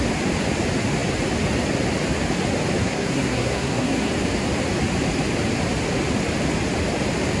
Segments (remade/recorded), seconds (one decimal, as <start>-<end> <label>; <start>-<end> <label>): 0.0-2.8 recorded; 2.8-4.1 remade; 4.1-7.4 recorded